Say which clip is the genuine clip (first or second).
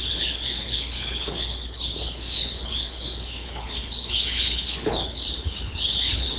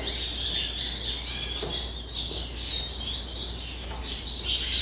second